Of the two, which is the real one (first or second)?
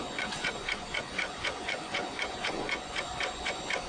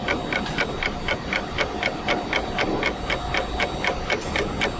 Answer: second